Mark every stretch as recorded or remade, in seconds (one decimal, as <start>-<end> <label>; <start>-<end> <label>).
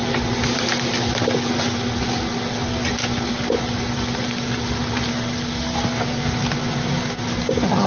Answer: 0.0-7.9 recorded